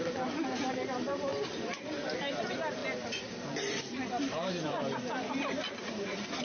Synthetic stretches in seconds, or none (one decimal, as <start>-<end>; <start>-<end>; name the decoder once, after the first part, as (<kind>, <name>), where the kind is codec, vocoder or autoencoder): 0.0-2.8 (vocoder, BigVGAN v2); 3.8-4.8; 5.8-6.4

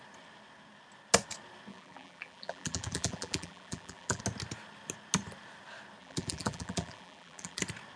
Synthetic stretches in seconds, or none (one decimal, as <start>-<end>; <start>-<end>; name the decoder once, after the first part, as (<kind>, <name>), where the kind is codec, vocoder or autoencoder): 1.7-4.2 (vocoder, BigVGAN v2); 6.0-7.6

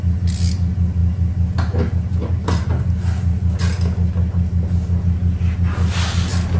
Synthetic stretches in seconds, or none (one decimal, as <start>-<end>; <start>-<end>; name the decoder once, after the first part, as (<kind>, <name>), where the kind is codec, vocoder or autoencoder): none

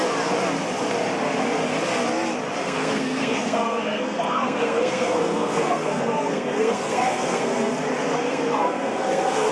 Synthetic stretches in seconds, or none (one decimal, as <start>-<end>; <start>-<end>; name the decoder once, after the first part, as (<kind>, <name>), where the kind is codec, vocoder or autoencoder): 2.6-7.7 (codec, SNAC); 8.2-9.5

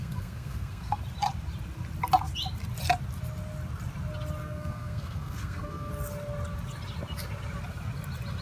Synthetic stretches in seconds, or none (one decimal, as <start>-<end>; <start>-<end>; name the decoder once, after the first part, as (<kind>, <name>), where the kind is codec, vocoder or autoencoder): 0.0-1.0 (codec, SNAC); 4.4-5.9

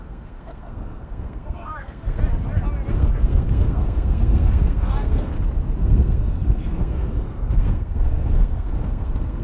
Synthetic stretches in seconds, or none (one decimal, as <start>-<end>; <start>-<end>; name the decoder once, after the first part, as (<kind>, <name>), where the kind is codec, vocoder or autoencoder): 0.0-2.2 (codec, SNAC); 2.9-5.3; 5.8-9.4